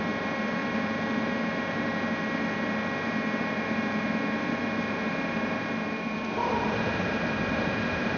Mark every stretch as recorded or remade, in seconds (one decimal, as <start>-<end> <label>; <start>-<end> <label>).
0.0-8.2 remade